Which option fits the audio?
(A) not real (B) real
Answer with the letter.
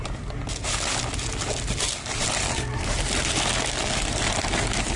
B